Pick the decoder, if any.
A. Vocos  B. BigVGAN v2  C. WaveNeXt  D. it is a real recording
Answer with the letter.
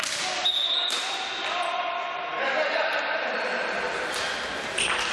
D